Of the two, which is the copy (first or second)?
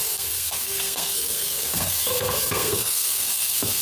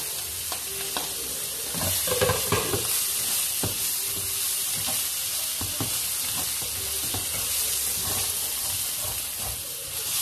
first